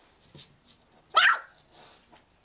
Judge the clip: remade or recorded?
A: recorded